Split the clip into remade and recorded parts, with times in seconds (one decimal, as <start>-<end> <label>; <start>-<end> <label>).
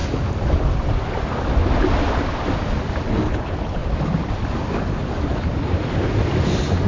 0.0-6.9 recorded